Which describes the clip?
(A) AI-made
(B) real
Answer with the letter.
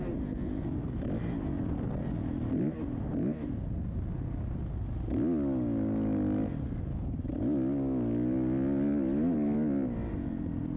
B